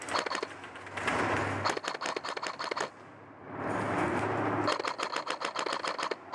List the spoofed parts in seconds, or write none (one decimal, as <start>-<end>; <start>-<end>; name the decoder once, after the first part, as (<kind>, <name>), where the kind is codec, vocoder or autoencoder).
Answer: 2.1-3.8 (vocoder, BigVGAN v2)